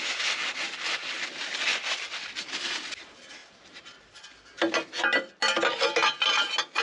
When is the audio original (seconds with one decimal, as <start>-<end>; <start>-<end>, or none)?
0.0-0.4; 1.0-1.7; 2.4-3.4; 5.3-6.8